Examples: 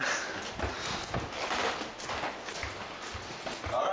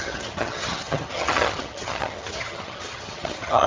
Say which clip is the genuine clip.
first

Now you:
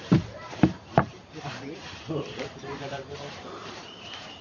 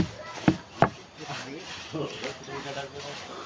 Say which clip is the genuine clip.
second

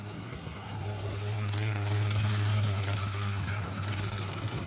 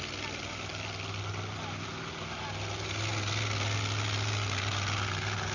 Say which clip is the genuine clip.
second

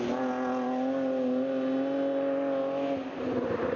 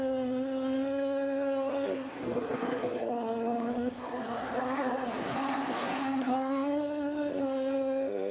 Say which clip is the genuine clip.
first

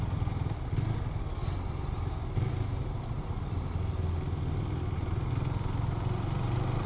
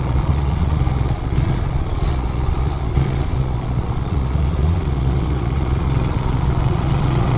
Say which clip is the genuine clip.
first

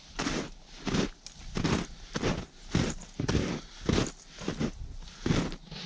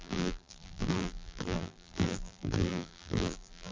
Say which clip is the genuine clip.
first